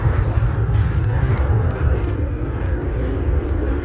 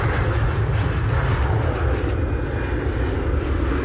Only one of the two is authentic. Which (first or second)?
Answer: second